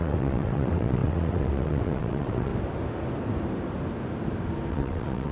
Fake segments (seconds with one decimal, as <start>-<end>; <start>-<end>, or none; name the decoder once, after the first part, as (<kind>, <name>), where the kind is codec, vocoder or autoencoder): 0.0-2.5 (vocoder, WaveNeXt); 4.7-5.3